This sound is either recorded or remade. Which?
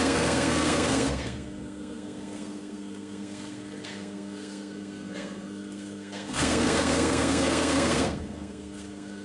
remade